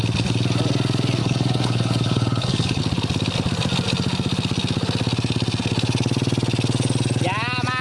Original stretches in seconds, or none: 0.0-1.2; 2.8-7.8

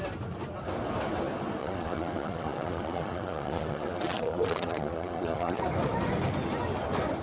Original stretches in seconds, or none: 0.0-1.6; 5.6-7.2

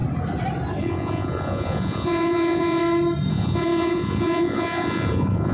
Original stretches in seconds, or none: 0.0-0.8; 2.8-3.3

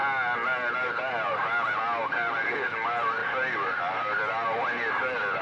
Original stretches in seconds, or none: 0.0-5.4

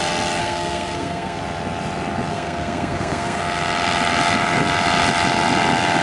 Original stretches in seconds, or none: 0.0-0.4; 1.4-2.3; 3.4-6.0

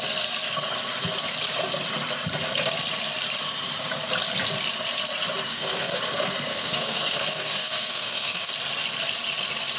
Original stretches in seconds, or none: 0.0-5.5; 6.0-6.5; 8.5-9.8